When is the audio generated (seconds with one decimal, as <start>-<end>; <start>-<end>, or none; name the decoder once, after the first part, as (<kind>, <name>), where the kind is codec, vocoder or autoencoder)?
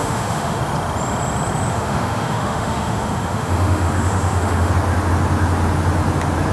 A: 0.0-0.6 (autoencoder, DAC-VAE); 1.7-4.7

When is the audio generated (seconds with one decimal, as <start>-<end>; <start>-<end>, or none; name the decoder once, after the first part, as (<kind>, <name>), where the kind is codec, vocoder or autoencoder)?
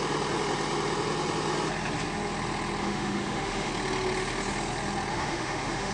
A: 2.8-3.7 (autoencoder, DAC-VAE); 5.1-5.9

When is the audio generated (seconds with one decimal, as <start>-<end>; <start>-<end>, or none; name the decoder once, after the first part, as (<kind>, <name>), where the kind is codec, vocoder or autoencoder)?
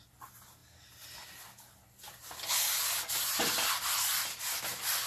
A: none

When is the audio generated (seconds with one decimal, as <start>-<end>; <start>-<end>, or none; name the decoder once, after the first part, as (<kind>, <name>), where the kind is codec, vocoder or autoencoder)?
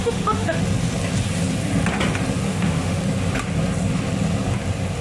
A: 0.0-0.6 (autoencoder, DAC-VAE); 2.5-3.0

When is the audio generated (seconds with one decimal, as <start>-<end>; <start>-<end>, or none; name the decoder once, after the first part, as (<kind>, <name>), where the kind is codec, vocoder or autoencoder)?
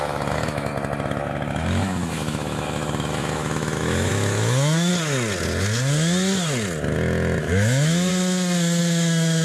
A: 0.0-0.7 (autoencoder, DAC-VAE); 1.5-4.9; 7.4-8.1; 8.8-9.4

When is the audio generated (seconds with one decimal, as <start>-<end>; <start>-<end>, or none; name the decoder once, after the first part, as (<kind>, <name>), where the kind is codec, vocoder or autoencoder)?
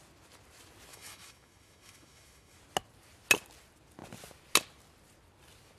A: 0.9-2.6 (autoencoder, DAC-VAE)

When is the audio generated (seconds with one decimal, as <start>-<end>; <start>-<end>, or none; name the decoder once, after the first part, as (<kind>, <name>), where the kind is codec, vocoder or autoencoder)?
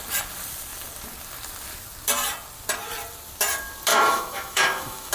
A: 3.9-5.1 (autoencoder, DAC-VAE)